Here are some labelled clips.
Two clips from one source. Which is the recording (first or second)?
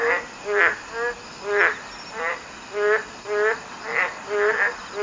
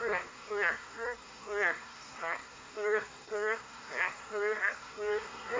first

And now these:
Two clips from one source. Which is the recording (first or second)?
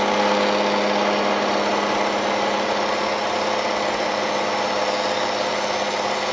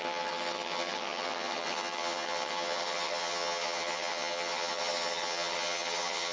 first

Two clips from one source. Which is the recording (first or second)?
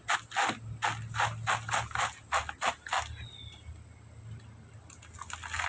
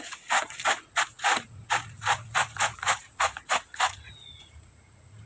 first